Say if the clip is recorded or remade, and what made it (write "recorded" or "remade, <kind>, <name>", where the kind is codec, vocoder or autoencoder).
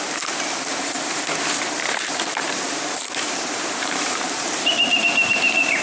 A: remade, vocoder, BigVGAN v2